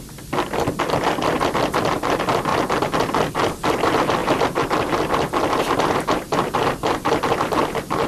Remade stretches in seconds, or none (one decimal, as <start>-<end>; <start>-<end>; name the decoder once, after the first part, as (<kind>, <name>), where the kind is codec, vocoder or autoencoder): none